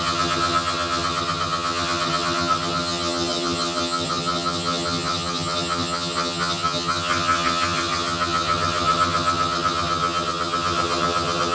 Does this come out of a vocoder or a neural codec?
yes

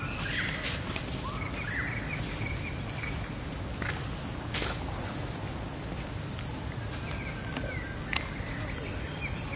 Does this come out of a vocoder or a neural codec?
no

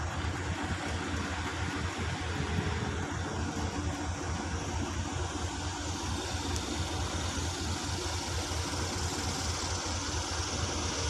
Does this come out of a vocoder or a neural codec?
no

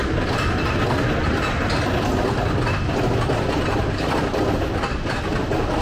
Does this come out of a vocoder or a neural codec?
no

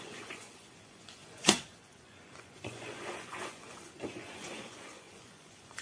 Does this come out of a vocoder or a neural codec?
yes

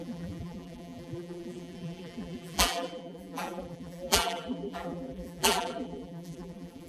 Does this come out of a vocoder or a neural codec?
yes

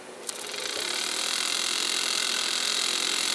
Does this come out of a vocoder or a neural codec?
no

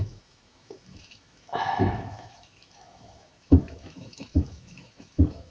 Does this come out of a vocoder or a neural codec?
yes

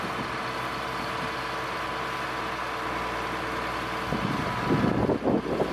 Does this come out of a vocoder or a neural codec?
no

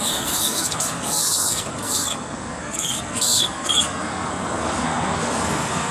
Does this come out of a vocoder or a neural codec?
yes